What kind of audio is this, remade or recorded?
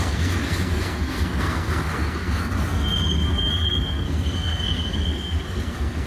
remade